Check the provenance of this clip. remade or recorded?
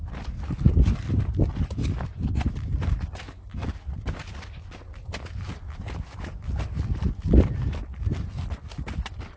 recorded